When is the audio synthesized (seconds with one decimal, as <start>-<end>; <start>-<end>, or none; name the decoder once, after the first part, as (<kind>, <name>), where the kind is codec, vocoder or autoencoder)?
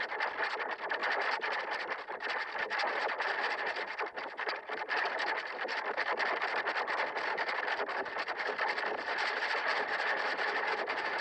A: none